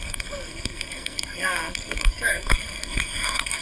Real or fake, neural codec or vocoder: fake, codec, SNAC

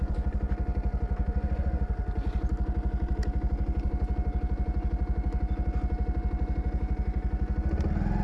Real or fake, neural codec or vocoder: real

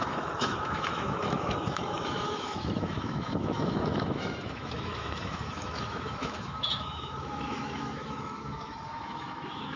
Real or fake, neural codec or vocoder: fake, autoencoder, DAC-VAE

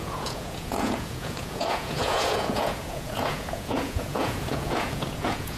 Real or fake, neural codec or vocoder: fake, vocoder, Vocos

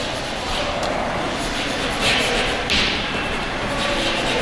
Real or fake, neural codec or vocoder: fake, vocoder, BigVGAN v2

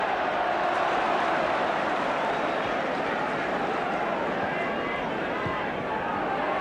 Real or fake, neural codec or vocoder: real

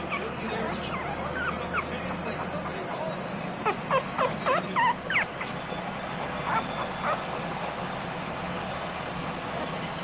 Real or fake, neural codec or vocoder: real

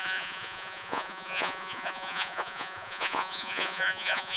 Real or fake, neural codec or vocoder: fake, vocoder, Vocos